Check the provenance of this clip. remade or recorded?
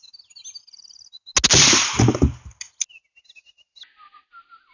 recorded